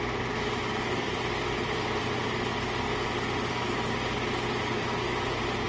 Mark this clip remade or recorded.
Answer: recorded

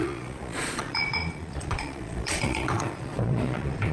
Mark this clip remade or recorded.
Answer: remade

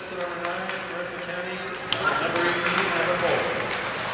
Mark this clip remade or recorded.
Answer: recorded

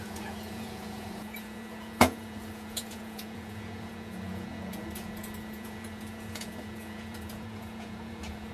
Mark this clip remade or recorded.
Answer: remade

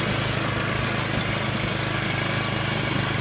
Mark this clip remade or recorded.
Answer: recorded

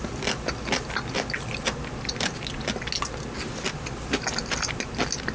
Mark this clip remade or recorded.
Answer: recorded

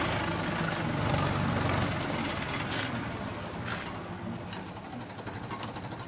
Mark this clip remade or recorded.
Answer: recorded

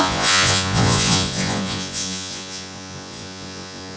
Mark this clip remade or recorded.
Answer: remade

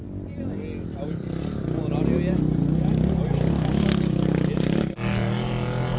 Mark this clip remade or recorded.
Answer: recorded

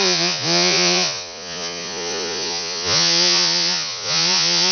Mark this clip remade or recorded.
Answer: remade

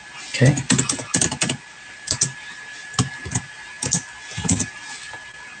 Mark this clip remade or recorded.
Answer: recorded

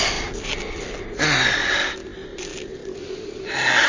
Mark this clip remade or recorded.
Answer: recorded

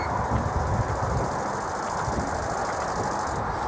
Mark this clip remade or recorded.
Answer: recorded